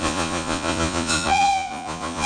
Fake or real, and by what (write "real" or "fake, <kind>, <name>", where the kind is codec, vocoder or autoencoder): fake, vocoder, Vocos